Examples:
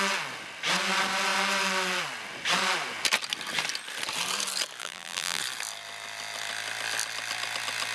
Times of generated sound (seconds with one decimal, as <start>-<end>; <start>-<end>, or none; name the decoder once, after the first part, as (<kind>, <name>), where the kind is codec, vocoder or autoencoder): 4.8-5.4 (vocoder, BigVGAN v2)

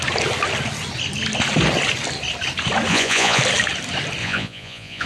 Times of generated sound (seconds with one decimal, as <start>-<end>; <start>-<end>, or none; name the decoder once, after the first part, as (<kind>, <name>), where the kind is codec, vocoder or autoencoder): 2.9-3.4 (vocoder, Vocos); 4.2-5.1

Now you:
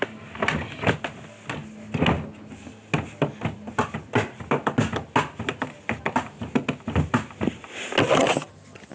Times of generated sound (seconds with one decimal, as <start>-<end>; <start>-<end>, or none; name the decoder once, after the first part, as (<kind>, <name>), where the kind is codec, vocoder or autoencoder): none

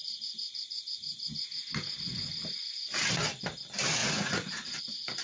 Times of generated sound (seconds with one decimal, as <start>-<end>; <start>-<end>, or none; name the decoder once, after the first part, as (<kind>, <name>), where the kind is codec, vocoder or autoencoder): 4.0-4.8 (vocoder, Vocos)

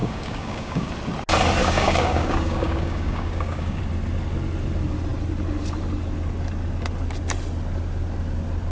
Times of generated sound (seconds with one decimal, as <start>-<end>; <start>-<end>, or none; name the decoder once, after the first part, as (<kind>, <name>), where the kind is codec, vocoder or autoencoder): 0.0-0.9 (codec, DAC); 1.6-3.8

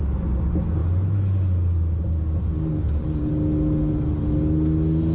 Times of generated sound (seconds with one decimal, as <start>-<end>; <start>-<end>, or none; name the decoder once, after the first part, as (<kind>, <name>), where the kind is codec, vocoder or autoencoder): none

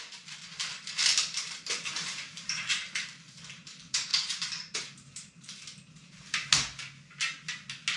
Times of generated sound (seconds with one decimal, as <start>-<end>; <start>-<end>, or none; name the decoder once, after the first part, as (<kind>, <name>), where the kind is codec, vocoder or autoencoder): 0.0-4.1 (vocoder, BigVGAN v2); 4.8-6.4

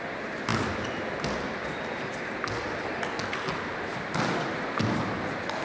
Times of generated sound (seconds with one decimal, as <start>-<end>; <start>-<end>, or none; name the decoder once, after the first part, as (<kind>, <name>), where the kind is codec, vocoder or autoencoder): none